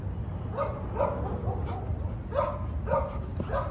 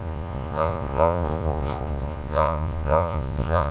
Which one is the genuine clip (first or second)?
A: first